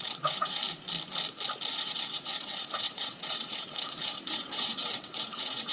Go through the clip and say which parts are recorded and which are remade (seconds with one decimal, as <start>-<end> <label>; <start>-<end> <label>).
0.0-0.6 remade; 0.6-1.7 recorded; 1.7-5.7 remade

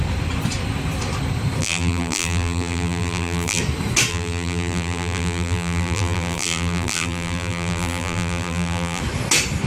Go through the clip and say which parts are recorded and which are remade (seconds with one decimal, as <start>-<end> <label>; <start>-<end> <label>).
0.0-1.6 recorded; 1.6-3.6 remade; 3.6-4.1 recorded; 4.1-9.0 remade; 9.0-9.7 recorded